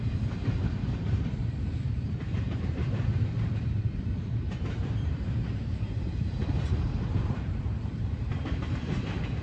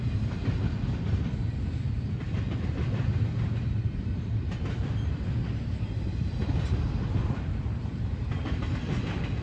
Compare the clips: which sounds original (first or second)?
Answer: second